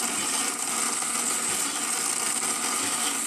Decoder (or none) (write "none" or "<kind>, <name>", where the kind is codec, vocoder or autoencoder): none